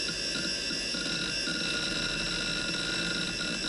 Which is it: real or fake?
real